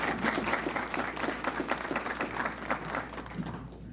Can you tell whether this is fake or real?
real